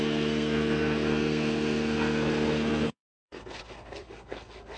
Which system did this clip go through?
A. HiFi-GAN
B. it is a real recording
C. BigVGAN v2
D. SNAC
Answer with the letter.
D